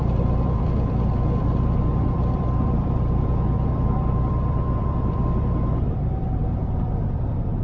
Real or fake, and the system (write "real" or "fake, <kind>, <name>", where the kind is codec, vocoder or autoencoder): fake, vocoder, BigVGAN v2